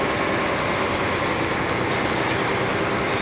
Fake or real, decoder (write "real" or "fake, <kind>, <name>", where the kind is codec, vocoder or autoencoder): real